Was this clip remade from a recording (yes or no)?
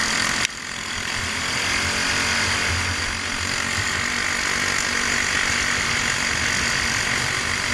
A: no